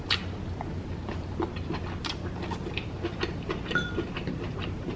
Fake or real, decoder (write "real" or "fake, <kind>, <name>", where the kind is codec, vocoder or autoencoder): real